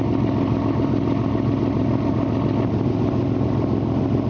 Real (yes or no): yes